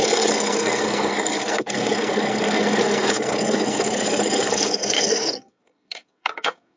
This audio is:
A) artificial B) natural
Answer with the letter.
A